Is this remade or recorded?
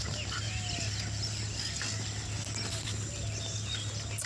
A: recorded